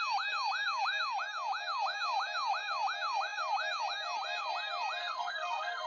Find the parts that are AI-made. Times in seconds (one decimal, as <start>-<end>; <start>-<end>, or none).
5.0-5.9